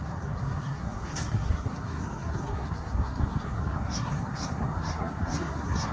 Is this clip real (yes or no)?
no